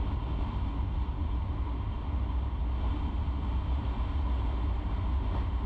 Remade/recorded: recorded